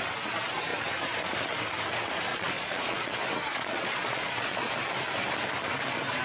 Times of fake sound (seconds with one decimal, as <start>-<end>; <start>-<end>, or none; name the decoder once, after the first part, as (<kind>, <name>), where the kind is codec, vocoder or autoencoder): 2.3-3.1 (vocoder, Vocos); 3.5-4.7